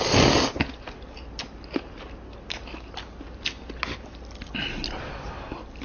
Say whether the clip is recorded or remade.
recorded